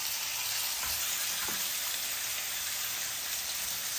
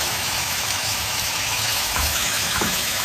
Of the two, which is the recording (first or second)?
first